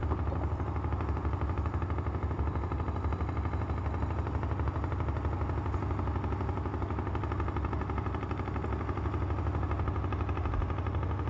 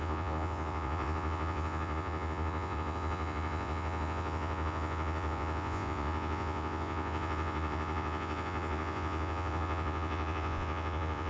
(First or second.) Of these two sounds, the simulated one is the second